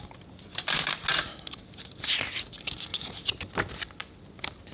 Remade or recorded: recorded